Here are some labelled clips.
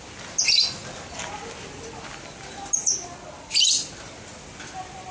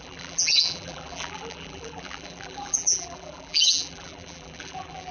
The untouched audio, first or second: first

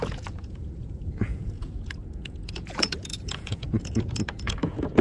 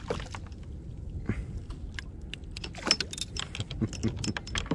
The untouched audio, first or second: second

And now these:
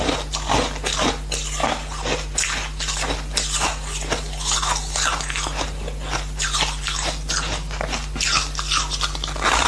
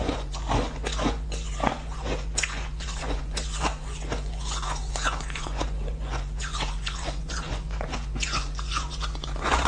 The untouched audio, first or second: first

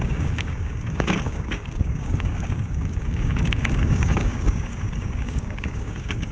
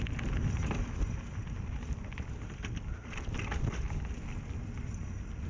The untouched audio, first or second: second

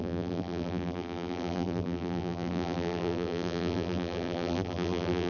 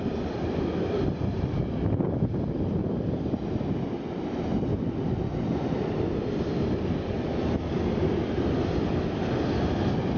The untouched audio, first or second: second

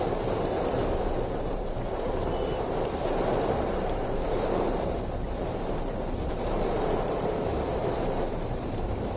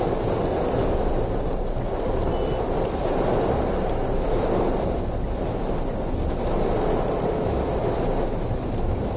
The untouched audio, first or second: second